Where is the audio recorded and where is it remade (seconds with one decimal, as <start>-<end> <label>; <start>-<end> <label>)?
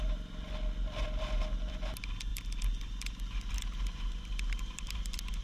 0.0-5.4 recorded